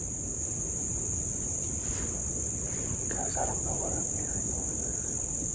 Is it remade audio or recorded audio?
recorded